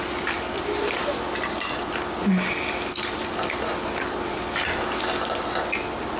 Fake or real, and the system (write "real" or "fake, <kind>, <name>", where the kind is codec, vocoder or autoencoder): real